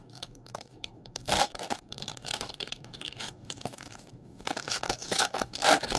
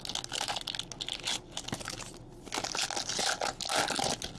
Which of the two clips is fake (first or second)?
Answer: first